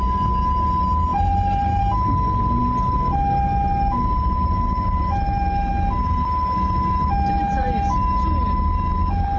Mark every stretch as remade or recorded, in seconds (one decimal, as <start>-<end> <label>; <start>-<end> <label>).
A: 0.0-1.1 recorded; 1.1-1.8 remade; 1.8-9.4 recorded

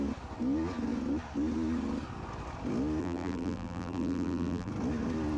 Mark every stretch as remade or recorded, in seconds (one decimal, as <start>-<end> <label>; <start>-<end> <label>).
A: 0.0-3.0 recorded; 3.0-4.7 remade; 4.7-5.4 recorded